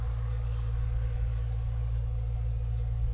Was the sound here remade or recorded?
remade